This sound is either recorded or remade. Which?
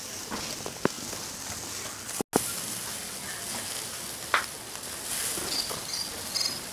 recorded